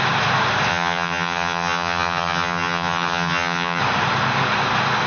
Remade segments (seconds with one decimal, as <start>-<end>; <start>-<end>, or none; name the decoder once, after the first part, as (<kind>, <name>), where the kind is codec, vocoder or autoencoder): 0.7-3.8 (vocoder, HiFi-GAN)

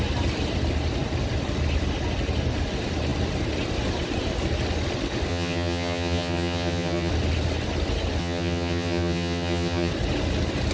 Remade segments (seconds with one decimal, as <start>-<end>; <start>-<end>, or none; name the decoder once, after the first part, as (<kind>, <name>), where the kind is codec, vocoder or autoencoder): 5.3-7.1 (vocoder, HiFi-GAN); 8.2-9.9

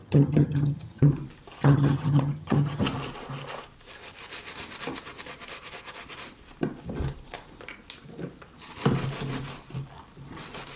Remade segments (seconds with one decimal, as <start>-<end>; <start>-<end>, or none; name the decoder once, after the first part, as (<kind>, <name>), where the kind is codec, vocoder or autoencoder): 0.0-1.1 (vocoder, HiFi-GAN); 1.6-2.8